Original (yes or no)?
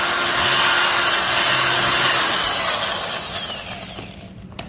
yes